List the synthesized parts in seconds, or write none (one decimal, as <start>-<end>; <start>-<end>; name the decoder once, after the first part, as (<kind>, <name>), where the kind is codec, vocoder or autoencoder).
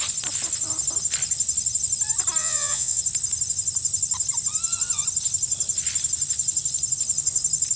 2.4-3.0 (vocoder, Vocos)